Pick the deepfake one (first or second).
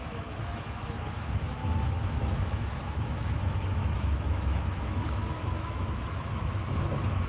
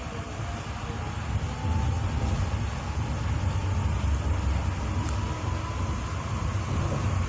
first